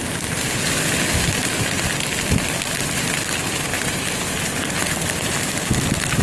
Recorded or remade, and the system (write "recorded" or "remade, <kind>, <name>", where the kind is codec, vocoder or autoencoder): recorded